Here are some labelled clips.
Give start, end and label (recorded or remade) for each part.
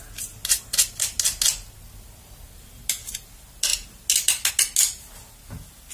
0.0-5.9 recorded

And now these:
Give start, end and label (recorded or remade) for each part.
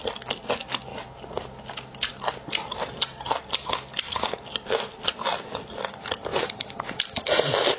0.0-6.3 recorded; 6.3-7.0 remade; 7.0-7.8 recorded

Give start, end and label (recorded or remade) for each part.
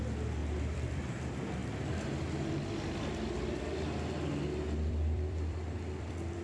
0.0-1.6 remade; 1.6-4.9 recorded; 4.9-6.4 remade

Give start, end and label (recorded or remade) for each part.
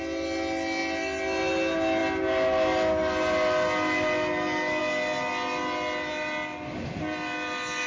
0.0-7.9 recorded